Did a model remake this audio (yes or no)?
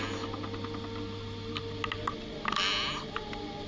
no